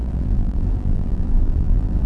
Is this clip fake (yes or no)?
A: yes